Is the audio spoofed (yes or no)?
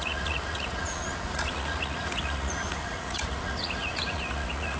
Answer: yes